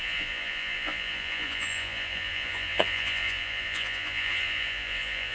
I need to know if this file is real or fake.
fake